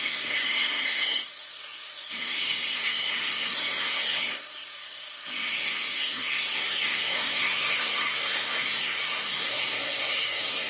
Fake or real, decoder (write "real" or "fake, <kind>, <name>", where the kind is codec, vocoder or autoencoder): fake, codec, SNAC